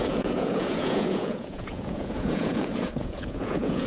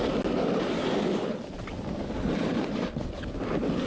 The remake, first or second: first